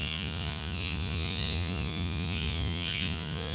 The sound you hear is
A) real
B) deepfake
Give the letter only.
B